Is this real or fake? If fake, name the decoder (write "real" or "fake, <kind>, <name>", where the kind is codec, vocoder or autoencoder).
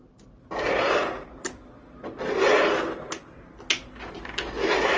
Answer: real